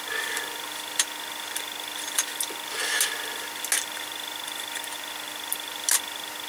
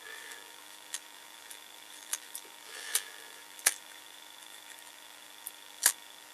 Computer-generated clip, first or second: second